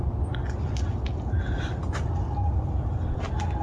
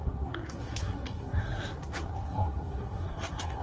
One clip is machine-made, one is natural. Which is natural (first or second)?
first